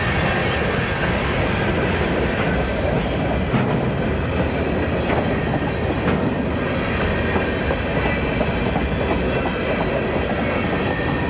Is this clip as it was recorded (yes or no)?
yes